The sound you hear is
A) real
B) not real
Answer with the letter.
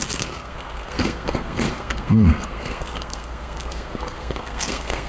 B